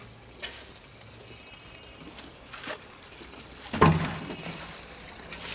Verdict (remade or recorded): recorded